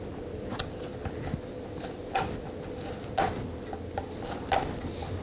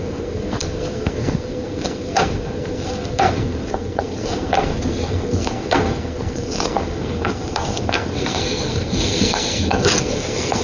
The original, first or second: first